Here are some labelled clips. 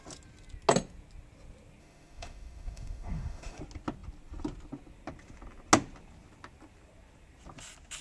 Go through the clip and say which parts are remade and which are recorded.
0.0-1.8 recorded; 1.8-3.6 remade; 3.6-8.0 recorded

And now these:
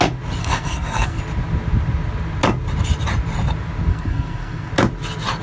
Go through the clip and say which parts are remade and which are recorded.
0.0-0.4 recorded; 0.4-1.2 remade; 1.2-3.9 recorded; 3.9-4.7 remade; 4.7-5.4 recorded